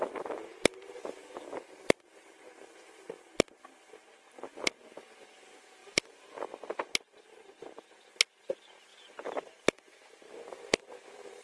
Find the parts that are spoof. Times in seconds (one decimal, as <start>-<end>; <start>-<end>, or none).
none

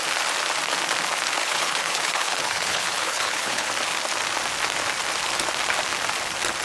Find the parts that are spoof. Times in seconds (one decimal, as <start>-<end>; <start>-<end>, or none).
1.4-3.7

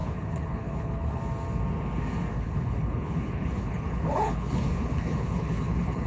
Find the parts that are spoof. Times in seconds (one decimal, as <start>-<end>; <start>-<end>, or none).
0.0-1.2; 2.3-6.1

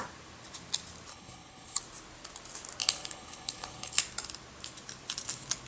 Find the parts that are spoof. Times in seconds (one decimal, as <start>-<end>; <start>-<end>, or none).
1.1-1.8; 2.8-4.0

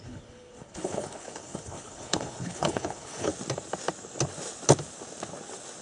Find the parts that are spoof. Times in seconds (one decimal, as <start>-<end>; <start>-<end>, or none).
0.0-3.3